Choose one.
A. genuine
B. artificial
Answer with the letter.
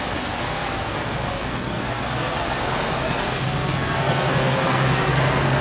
B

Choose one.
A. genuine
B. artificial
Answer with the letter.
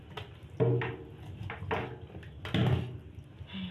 A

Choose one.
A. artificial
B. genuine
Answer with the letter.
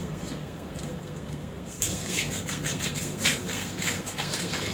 A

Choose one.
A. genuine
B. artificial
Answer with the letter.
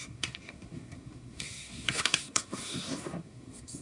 B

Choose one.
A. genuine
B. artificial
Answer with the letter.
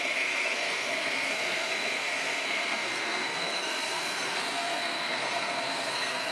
B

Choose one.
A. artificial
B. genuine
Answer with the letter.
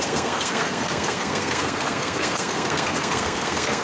A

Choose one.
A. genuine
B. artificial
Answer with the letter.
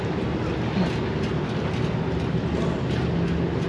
A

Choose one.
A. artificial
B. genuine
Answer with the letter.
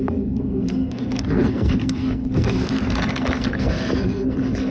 A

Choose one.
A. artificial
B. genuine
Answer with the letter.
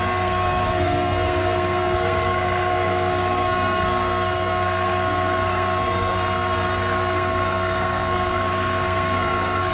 A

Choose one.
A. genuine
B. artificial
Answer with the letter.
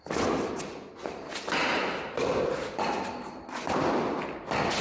A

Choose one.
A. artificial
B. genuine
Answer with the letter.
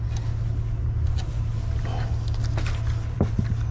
B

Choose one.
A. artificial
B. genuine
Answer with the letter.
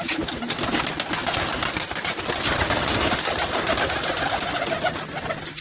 B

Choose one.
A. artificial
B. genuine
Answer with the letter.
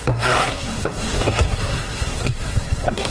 A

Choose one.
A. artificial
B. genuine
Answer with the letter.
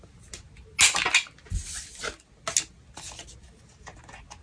B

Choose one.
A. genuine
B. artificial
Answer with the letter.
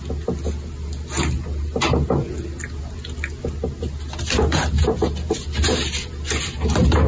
A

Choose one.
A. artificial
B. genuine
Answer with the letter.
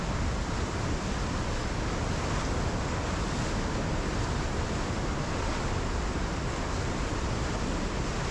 B